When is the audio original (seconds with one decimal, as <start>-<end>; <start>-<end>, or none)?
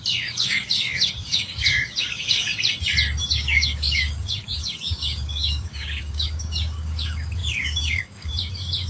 2.5-3.2